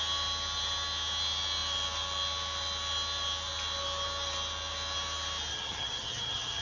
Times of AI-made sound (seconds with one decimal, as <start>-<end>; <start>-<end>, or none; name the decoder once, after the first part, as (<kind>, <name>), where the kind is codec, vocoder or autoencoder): 5.5-6.6 (vocoder, HiFi-GAN)